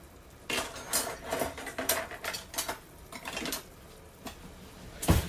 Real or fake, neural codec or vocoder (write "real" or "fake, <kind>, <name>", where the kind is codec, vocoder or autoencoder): real